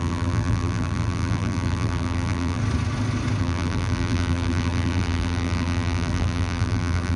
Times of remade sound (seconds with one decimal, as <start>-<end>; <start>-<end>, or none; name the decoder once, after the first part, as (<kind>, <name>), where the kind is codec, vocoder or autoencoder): 0.0-2.6 (vocoder, BigVGAN v2); 3.4-7.2